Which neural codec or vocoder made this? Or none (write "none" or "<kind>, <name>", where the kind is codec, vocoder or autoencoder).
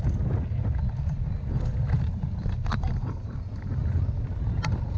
none